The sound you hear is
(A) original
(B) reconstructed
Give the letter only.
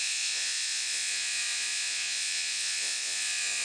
B